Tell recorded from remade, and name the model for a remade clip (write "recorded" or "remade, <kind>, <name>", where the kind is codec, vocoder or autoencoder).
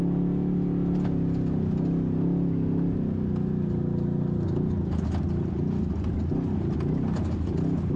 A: recorded